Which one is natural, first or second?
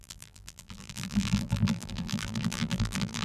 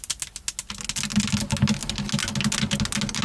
second